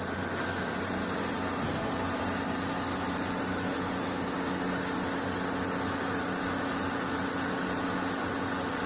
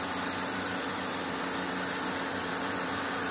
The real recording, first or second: first